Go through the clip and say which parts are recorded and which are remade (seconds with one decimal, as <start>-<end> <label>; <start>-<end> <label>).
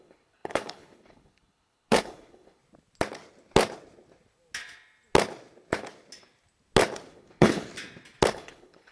0.0-2.6 remade; 2.6-7.1 recorded; 7.1-7.7 remade; 7.7-8.3 recorded; 8.3-8.9 remade